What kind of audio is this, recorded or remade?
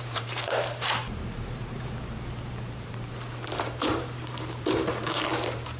remade